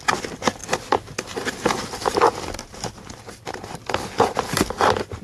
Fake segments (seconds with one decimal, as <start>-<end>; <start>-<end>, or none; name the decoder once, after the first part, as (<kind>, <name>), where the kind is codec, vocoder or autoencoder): none